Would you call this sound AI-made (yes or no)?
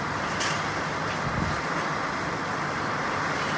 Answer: no